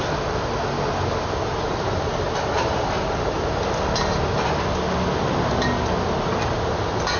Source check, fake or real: real